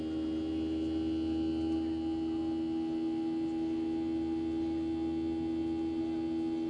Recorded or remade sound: recorded